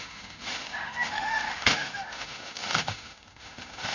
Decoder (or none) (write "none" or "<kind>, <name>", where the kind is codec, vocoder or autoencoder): autoencoder, DAC-VAE